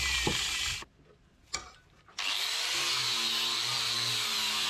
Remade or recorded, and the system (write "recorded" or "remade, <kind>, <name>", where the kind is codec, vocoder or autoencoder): recorded